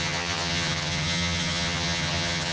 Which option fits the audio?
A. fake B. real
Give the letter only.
A